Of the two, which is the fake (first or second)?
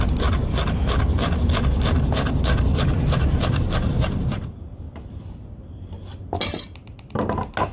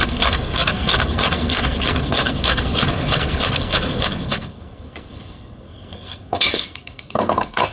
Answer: second